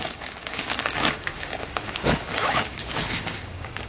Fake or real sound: fake